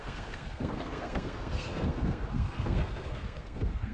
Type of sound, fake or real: fake